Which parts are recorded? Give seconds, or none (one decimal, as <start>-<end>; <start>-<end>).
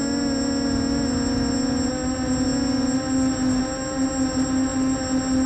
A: 0.0-5.5